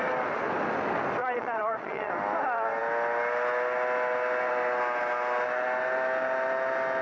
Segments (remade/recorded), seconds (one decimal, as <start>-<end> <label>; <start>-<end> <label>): 0.0-1.2 recorded; 1.2-2.1 remade; 2.1-7.0 recorded